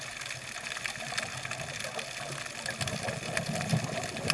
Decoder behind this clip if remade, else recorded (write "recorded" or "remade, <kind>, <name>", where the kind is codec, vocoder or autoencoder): recorded